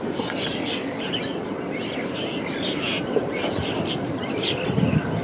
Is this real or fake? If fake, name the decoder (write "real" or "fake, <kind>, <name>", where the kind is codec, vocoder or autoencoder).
fake, vocoder, BigVGAN v2